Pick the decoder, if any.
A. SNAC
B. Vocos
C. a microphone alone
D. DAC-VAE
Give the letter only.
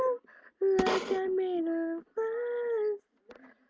C